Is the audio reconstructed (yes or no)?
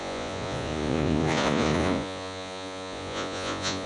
yes